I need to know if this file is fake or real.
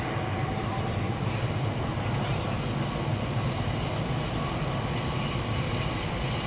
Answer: real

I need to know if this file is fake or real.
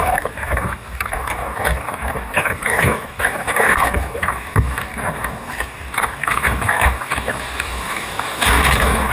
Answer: fake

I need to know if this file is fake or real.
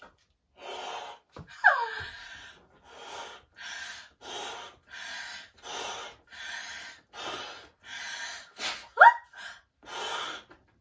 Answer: real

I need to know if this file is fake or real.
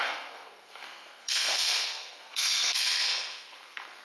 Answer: fake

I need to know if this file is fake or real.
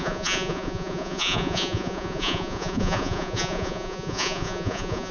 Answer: fake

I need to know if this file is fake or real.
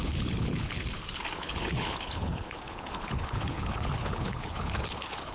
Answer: fake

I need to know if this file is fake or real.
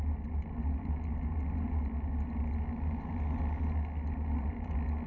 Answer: real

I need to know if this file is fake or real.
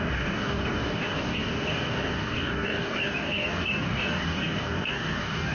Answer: fake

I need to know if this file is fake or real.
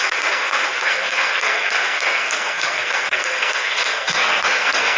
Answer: fake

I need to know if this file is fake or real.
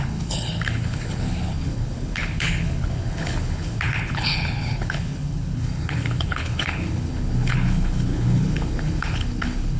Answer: fake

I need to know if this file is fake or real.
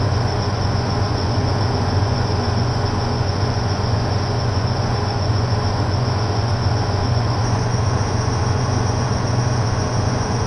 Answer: fake